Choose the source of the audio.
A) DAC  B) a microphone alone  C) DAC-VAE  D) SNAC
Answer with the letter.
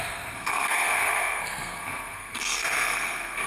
D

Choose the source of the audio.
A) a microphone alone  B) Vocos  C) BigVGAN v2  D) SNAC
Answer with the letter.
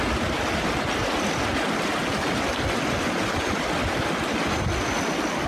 A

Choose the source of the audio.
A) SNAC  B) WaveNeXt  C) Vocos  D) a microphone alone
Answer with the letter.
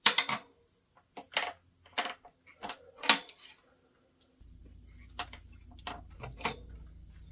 D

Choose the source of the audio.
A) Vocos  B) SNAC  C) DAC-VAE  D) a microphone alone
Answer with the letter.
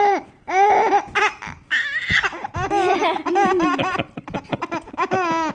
D